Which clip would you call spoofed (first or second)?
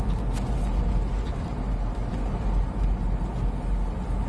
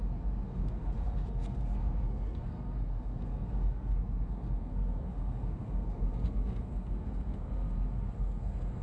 second